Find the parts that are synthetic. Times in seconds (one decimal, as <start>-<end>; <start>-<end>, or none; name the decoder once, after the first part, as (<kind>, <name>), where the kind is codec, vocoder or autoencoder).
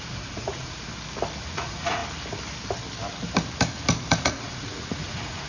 0.0-0.9 (vocoder, Vocos); 1.4-2.0; 4.1-5.5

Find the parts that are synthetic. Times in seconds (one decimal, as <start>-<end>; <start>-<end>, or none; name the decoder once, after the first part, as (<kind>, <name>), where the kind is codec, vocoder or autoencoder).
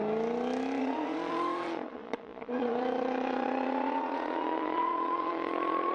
0.8-5.9 (vocoder, Vocos)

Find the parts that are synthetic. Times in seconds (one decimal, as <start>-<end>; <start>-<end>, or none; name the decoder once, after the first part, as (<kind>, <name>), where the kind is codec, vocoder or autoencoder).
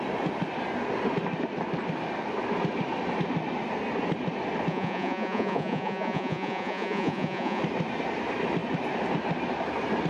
4.7-7.6 (vocoder, Vocos)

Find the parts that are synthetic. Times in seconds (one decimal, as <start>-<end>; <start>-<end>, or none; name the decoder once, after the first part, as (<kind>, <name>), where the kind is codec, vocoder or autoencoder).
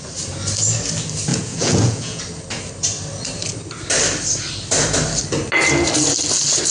1.3-2.2 (vocoder, Vocos)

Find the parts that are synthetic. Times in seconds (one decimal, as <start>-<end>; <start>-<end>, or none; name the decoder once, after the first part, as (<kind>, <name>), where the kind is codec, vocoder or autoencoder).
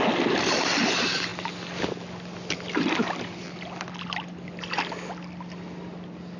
none